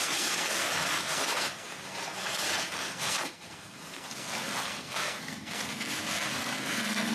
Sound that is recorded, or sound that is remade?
remade